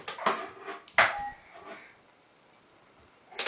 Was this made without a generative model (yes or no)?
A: yes